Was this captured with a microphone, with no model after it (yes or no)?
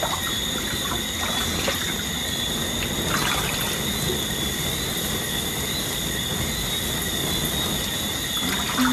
yes